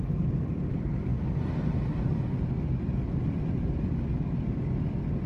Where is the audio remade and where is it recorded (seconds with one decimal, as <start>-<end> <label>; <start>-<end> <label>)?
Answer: 0.0-5.3 recorded